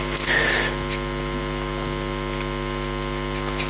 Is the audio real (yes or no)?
yes